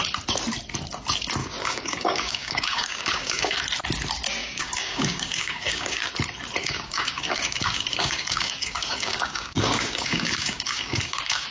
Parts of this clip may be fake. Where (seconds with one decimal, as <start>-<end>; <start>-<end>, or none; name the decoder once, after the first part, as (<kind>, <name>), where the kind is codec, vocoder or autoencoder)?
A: 1.4-3.6 (codec, DAC); 4.4-6.1; 6.6-11.5